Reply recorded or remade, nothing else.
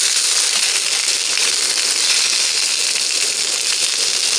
recorded